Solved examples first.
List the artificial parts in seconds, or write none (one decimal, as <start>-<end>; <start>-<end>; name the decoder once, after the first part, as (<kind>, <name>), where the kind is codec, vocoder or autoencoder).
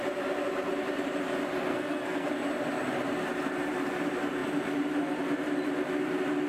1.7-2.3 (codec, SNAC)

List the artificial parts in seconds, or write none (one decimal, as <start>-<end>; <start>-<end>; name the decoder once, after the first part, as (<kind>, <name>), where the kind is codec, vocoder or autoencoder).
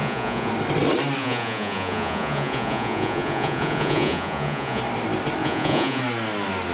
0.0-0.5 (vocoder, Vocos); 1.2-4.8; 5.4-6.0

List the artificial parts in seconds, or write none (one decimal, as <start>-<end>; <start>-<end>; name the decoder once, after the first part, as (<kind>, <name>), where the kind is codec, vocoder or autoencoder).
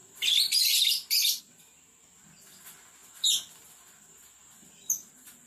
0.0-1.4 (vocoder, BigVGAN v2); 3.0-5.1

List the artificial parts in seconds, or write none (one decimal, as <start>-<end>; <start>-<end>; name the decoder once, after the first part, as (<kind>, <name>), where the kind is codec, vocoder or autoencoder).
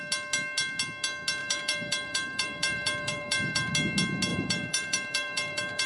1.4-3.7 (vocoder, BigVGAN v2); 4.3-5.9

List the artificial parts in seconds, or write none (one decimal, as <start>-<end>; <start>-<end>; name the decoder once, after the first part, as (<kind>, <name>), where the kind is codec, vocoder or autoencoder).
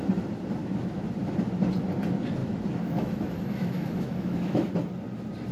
0.6-1.3 (autoencoder, DAC-VAE); 2.4-4.7